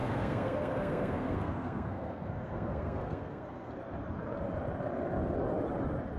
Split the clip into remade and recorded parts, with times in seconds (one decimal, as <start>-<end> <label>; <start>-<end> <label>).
0.0-3.7 remade; 3.7-6.2 recorded